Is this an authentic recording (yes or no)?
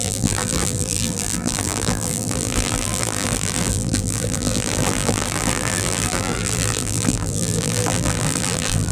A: no